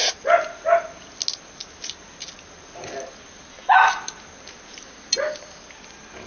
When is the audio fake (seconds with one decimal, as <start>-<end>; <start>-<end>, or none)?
3.5-4.0